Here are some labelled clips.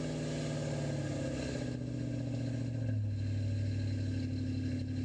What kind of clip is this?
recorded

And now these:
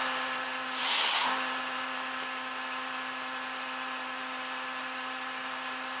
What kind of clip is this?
remade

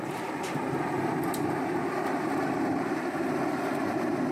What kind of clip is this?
remade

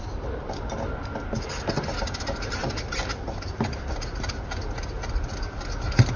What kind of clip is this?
recorded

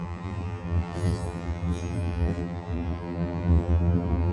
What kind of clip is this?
remade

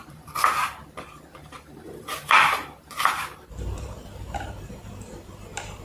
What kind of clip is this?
remade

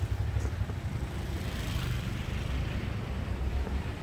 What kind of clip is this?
remade